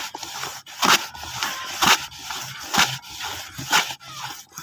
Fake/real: real